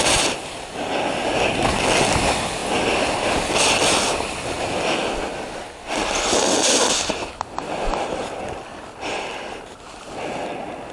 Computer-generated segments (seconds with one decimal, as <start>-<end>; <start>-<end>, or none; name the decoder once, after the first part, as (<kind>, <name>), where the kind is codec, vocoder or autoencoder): none